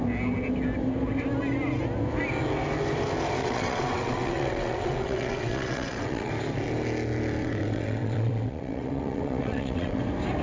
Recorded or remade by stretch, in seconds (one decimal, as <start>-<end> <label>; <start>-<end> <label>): 0.0-3.4 recorded; 3.4-6.3 remade; 6.3-7.4 recorded; 7.4-10.0 remade; 10.0-10.4 recorded